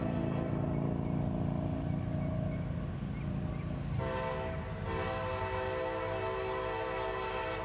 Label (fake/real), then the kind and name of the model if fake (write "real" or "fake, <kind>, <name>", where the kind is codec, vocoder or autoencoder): real